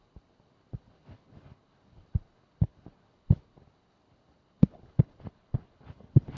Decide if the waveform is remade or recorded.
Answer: remade